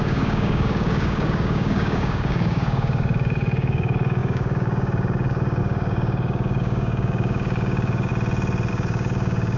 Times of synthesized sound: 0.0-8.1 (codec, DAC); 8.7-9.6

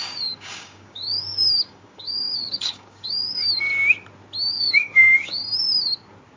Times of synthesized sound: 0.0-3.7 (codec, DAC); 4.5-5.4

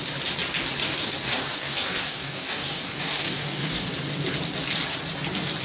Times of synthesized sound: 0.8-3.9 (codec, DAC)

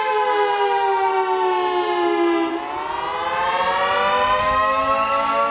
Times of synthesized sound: 0.0-1.1 (codec, DAC); 4.4-5.5

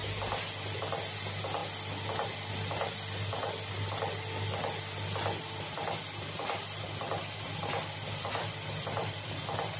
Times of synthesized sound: none

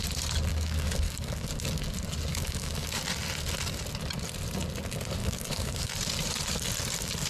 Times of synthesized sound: 0.5-1.5 (codec, DAC); 2.3-3.0; 5.2-5.9

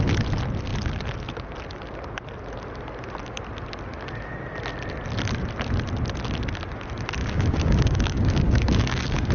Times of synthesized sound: 7.2-9.3 (codec, DAC)

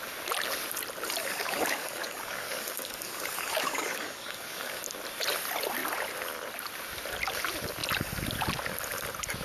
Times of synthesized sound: 1.2-4.8 (codec, DAC)